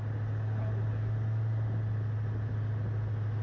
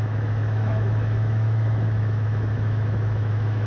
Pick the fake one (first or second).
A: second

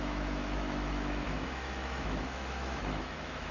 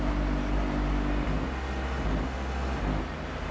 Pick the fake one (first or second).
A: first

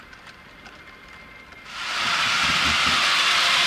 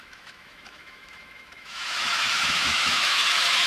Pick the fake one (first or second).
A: second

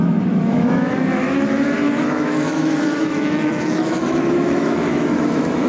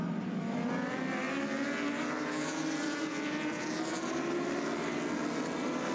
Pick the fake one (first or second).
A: first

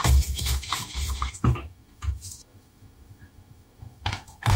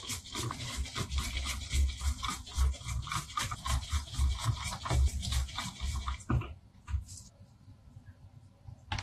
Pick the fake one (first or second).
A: first